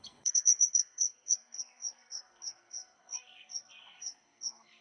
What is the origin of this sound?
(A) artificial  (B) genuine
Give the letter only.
A